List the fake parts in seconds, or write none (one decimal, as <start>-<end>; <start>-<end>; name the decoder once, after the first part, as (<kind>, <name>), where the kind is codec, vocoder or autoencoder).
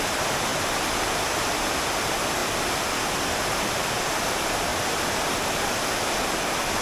0.5-1.7 (vocoder, BigVGAN v2); 2.4-3.7; 4.7-5.8